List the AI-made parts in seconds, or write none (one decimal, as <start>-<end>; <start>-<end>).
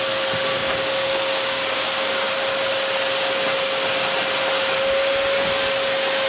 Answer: 0.6-2.3